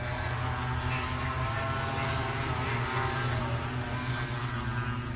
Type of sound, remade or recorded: recorded